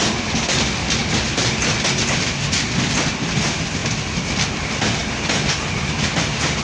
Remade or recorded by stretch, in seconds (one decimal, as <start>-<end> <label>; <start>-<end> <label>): 0.0-3.8 recorded; 3.8-4.4 remade; 4.4-6.6 recorded